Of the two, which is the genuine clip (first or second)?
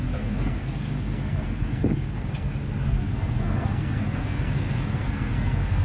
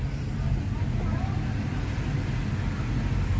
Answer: second